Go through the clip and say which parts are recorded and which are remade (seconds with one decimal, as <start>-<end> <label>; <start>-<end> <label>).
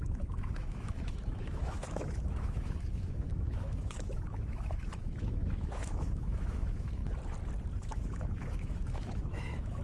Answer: 0.0-7.0 remade; 7.0-7.8 recorded; 7.8-9.8 remade